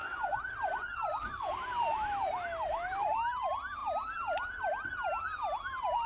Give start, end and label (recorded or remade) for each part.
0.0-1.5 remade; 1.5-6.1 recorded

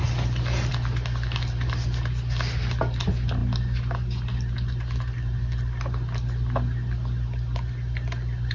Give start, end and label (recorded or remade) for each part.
0.0-8.5 recorded

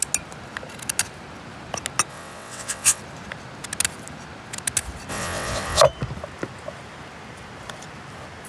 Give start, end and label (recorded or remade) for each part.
0.0-2.1 recorded; 2.1-3.0 remade; 3.0-5.1 recorded; 5.1-5.8 remade; 5.8-8.5 recorded

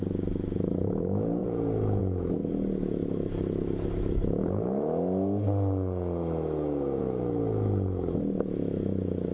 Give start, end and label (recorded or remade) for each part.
0.0-9.3 remade